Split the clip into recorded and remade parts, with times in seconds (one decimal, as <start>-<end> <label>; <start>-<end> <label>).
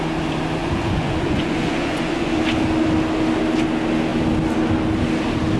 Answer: 0.0-0.6 recorded; 0.6-2.4 remade; 2.4-5.6 recorded